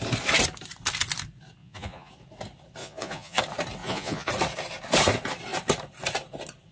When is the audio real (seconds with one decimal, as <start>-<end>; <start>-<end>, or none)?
0.0-1.6; 2.1-2.8; 3.4-3.8; 4.3-6.7